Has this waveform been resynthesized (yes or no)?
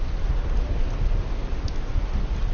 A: no